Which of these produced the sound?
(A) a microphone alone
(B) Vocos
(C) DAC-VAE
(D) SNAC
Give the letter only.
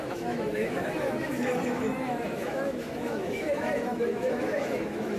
C